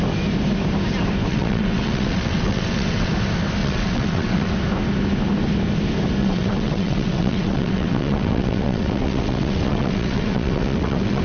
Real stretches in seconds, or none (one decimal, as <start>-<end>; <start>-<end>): 0.0-1.3; 3.1-3.6; 4.5-6.2